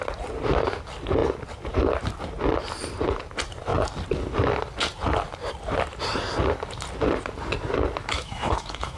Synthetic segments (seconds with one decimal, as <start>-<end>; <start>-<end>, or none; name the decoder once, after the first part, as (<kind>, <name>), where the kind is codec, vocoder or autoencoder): 8.0-9.0 (autoencoder, DAC-VAE)

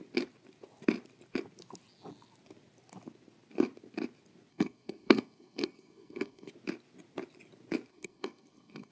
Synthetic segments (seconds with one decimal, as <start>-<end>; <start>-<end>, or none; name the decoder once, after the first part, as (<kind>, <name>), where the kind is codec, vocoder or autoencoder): 4.5-6.5 (codec, SNAC); 7.9-8.9